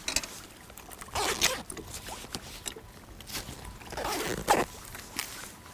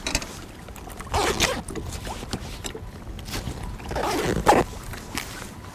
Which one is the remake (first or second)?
second